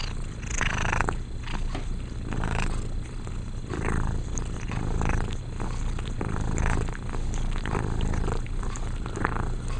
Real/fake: real